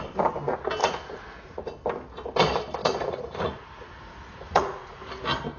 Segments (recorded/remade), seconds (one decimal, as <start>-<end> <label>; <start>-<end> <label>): 0.0-0.8 recorded; 0.8-1.6 remade; 1.6-2.8 recorded; 2.8-5.0 remade; 5.0-5.6 recorded